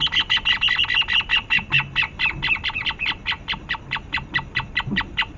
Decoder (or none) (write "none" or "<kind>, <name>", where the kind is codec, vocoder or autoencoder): none